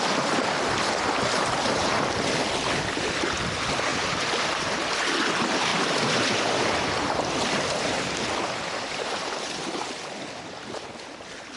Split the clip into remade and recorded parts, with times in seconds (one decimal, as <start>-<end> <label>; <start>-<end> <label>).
0.0-3.9 recorded; 3.9-4.7 remade; 4.7-5.7 recorded; 5.7-6.3 remade; 6.3-11.6 recorded